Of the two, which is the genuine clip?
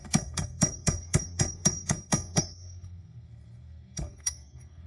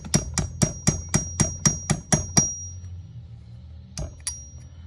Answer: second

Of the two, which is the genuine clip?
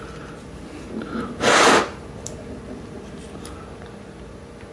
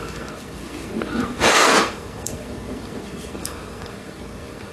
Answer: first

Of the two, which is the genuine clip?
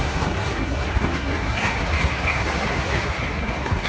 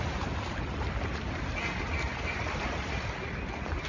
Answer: second